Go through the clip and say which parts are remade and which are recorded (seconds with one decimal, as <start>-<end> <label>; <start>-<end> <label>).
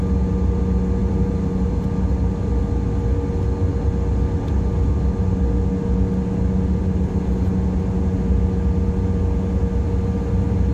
0.0-1.0 recorded; 1.0-1.8 remade; 1.8-10.7 recorded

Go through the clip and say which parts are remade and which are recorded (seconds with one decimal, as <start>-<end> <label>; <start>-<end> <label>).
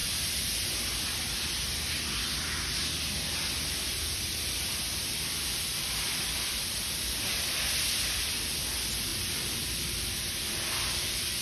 0.0-3.9 recorded; 3.9-7.9 remade; 7.9-9.1 recorded; 9.1-11.4 remade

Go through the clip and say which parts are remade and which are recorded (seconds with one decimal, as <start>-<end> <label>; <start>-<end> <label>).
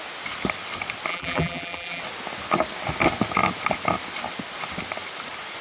0.0-1.1 recorded; 1.1-2.0 remade; 2.0-5.6 recorded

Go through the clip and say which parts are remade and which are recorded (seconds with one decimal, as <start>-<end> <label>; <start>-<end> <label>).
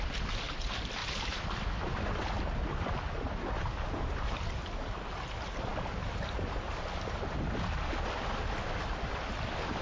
0.0-1.0 recorded; 1.0-4.4 remade; 4.4-9.8 recorded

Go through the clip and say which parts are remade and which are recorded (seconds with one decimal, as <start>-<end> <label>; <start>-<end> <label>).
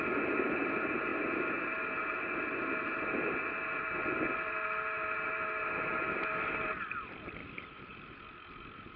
0.0-7.4 recorded; 7.4-8.2 remade; 8.2-9.0 recorded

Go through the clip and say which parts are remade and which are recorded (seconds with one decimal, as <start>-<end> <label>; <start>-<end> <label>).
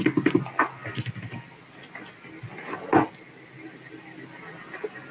0.0-5.1 recorded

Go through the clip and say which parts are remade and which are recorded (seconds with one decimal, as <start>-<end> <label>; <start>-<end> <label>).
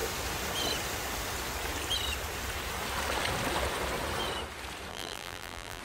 0.0-4.9 recorded; 4.9-5.8 remade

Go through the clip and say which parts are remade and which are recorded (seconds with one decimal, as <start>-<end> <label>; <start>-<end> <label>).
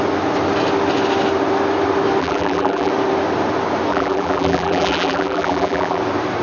0.0-2.2 recorded; 2.2-2.9 remade; 2.9-3.9 recorded; 3.9-6.0 remade; 6.0-6.4 recorded